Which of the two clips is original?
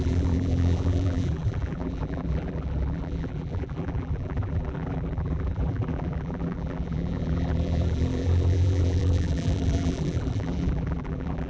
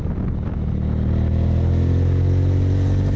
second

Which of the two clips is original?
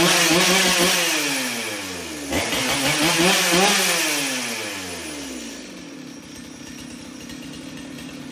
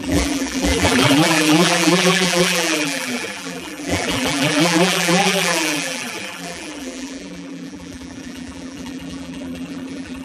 first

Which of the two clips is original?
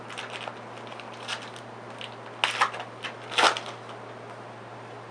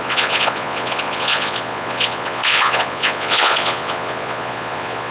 first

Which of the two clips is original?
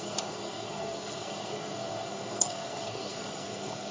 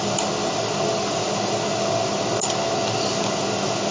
second